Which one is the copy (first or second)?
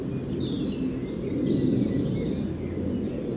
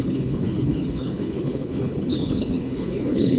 second